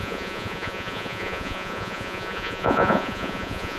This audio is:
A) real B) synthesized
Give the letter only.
B